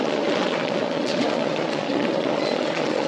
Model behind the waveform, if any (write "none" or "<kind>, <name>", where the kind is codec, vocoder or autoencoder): vocoder, Vocos